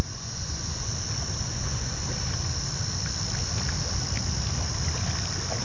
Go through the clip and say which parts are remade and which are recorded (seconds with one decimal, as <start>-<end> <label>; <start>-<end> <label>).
0.0-0.9 remade; 0.9-1.5 recorded; 1.5-2.0 remade; 2.0-5.6 recorded